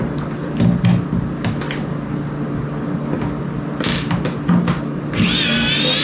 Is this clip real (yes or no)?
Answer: yes